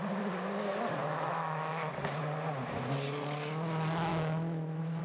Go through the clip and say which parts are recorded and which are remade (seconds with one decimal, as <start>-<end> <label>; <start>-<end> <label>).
0.0-1.0 recorded; 1.0-1.9 remade; 1.9-4.1 recorded; 4.1-5.0 remade